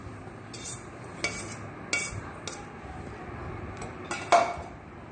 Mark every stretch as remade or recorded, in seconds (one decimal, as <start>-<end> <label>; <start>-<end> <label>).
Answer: 0.0-5.1 recorded